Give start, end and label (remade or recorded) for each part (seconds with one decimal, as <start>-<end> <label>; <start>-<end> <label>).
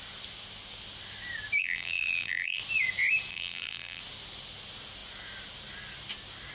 0.0-1.6 recorded; 1.6-2.6 remade; 2.6-3.3 recorded; 3.3-4.0 remade; 4.0-6.5 recorded